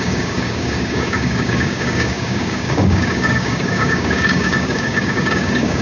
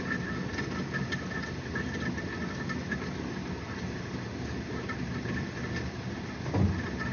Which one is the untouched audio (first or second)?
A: second